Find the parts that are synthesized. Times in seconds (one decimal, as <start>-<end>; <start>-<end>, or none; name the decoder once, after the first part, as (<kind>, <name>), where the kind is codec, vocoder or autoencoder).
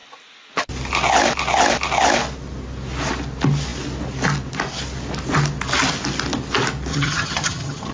6.9-7.9 (vocoder, HiFi-GAN)